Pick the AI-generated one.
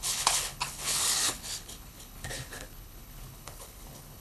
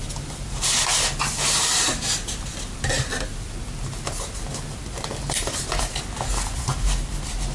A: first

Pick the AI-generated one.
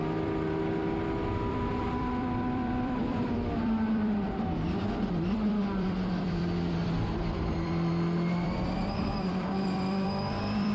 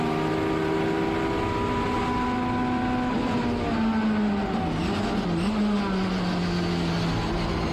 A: first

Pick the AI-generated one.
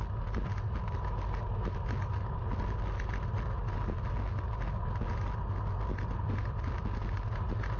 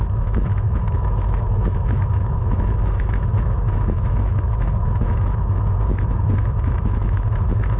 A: second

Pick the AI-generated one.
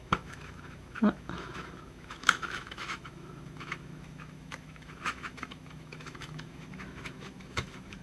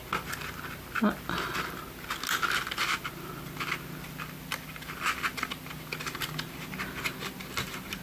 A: first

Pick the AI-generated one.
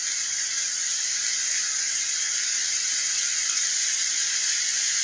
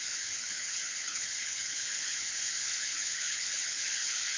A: second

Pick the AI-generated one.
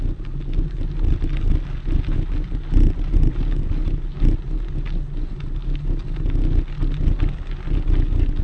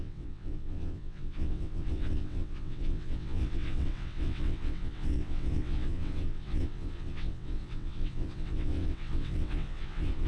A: second